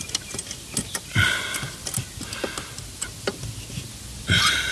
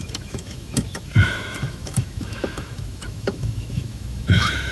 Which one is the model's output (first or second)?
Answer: second